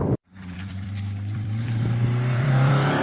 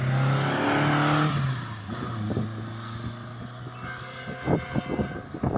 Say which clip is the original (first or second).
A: second